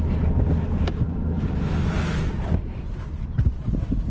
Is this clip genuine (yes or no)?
yes